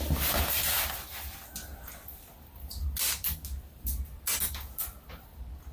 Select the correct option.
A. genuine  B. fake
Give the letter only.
A